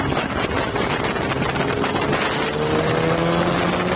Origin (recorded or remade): recorded